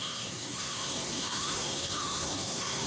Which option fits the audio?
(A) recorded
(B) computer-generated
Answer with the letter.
B